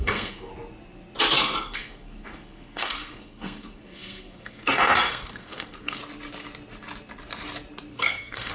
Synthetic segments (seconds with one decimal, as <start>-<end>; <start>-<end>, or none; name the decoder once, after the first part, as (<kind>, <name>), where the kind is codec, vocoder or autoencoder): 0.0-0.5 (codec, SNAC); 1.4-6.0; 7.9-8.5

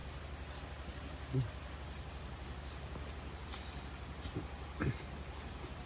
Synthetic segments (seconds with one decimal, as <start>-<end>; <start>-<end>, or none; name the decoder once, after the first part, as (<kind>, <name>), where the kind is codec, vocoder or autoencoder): none

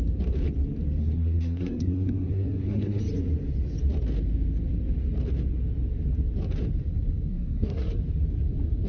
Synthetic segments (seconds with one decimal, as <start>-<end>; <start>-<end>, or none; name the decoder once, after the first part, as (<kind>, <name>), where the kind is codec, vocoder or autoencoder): 1.0-3.0 (codec, SNAC); 7.3-8.0